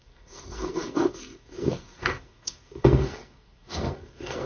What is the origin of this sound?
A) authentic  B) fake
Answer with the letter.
B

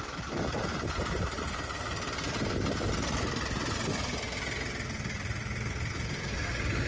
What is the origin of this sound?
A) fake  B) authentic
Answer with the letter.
B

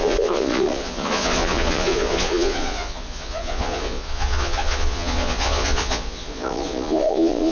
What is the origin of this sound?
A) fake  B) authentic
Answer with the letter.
A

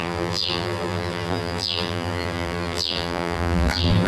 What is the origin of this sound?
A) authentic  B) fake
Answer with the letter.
B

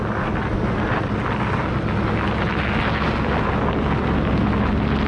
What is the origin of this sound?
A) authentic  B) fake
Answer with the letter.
A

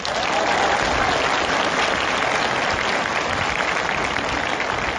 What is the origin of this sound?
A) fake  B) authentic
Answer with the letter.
B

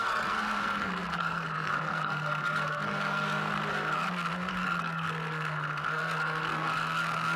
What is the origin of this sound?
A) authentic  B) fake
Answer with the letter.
B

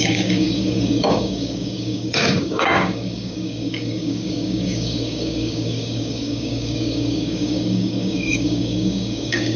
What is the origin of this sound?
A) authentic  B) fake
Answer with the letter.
B